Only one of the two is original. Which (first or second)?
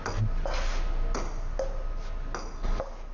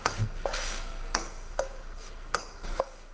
first